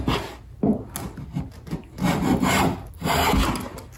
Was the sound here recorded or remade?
recorded